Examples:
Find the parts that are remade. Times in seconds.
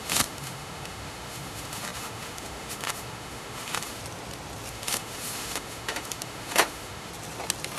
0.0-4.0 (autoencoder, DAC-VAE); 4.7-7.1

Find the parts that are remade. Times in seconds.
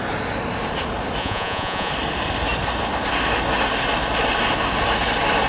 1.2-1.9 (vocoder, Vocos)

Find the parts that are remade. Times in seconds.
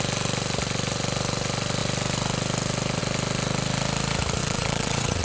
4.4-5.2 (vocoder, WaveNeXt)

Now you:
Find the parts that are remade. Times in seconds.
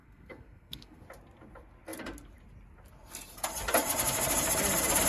0.0-1.0 (codec, SNAC)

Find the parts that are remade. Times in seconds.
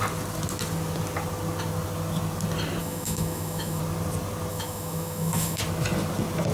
2.8-3.8 (autoencoder, DAC-VAE); 4.5-5.6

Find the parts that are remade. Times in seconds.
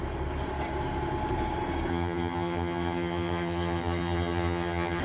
1.9-5.0 (vocoder, HiFi-GAN)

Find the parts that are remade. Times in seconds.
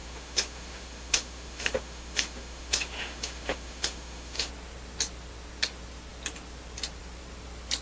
0.0-4.5 (autoencoder, DAC-VAE)